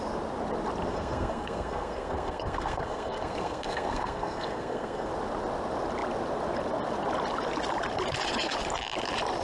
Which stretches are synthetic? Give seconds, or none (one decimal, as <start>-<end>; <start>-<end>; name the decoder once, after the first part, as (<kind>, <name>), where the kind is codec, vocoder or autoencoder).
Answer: 0.9-5.1 (codec, SNAC)